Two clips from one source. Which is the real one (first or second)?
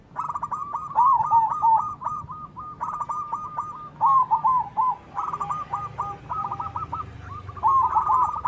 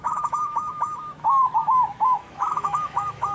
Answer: first